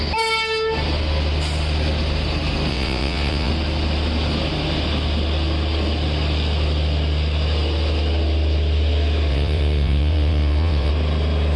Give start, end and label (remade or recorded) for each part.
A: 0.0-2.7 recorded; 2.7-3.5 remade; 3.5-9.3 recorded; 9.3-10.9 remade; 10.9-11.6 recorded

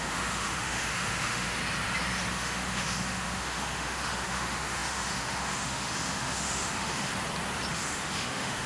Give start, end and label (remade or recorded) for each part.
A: 0.0-1.6 remade; 1.6-2.3 recorded; 2.3-7.1 remade; 7.1-7.7 recorded; 7.7-8.7 remade

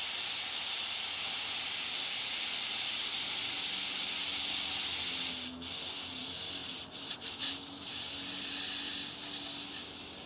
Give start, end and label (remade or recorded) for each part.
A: 0.0-2.9 recorded; 2.9-3.4 remade; 3.4-6.6 recorded; 6.6-7.4 remade; 7.4-10.3 recorded